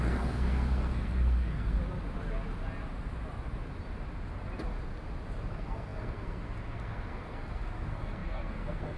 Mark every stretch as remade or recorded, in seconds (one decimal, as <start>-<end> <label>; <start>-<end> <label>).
0.0-1.8 remade; 1.8-5.5 recorded; 5.5-9.0 remade

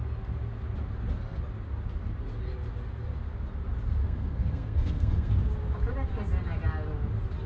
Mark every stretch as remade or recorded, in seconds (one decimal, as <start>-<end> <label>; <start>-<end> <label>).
0.0-4.0 recorded; 4.0-5.3 remade; 5.3-7.5 recorded